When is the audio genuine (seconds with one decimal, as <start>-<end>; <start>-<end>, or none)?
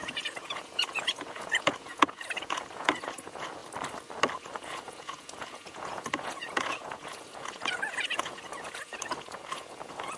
3.6-4.4